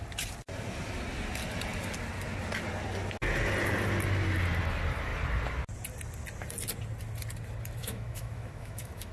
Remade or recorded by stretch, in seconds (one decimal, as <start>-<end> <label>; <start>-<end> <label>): 0.0-7.8 recorded; 7.8-9.1 remade

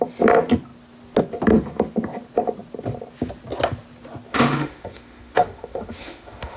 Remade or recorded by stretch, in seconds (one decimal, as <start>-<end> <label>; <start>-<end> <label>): 0.0-4.3 recorded; 4.3-6.6 remade